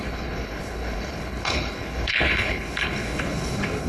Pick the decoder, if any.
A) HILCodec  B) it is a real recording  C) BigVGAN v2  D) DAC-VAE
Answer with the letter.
A